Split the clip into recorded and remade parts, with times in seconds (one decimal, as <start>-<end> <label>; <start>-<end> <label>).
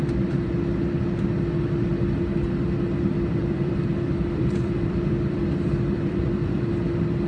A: 0.0-3.4 recorded; 3.4-6.7 remade; 6.7-7.3 recorded